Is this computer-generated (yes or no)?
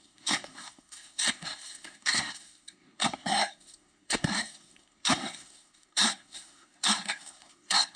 yes